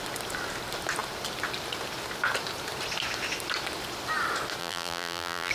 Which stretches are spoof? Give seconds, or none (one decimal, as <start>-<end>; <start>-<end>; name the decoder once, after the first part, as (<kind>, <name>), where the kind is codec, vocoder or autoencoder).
4.6-5.5 (vocoder, BigVGAN v2)